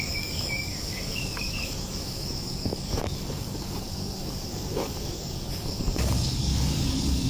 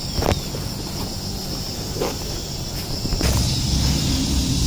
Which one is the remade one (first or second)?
first